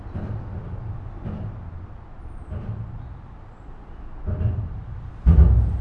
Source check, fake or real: real